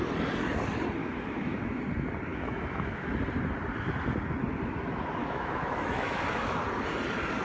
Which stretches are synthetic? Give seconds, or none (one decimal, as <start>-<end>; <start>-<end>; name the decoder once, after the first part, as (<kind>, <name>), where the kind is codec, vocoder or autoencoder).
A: 1.0-1.8 (autoencoder, DAC-VAE); 2.3-3.1; 5.2-6.6